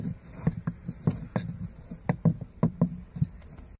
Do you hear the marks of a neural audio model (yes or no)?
no